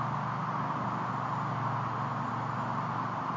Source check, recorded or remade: recorded